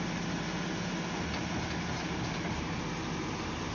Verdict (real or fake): real